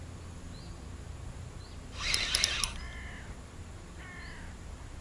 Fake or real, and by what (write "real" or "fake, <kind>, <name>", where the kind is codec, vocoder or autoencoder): real